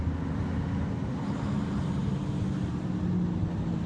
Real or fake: real